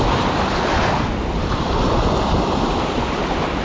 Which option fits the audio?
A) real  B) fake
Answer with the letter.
A